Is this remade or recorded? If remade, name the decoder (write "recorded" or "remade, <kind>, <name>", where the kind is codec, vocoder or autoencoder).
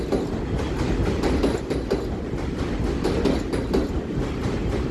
recorded